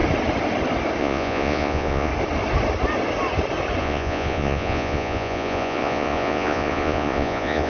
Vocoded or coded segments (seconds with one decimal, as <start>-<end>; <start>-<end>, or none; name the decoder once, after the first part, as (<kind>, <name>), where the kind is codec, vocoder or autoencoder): 1.0-2.1 (vocoder, Vocos); 3.8-7.7